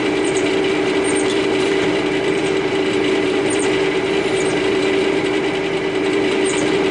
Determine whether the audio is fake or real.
fake